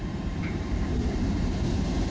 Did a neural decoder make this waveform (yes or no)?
yes